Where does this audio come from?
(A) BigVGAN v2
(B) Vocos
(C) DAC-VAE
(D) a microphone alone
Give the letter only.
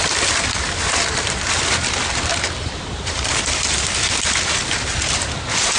D